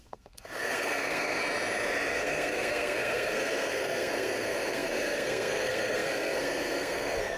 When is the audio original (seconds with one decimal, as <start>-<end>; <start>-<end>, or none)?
1.4-2.1